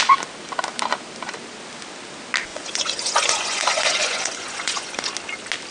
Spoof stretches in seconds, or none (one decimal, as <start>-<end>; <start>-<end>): 2.5-5.1

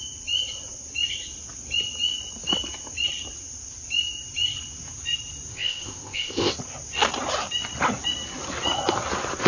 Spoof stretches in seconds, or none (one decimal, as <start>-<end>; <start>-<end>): 5.5-6.5